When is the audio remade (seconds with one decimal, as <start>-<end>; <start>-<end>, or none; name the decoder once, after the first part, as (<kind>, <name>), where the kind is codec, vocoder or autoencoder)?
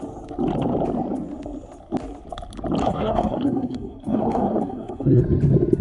2.8-5.2 (codec, SNAC)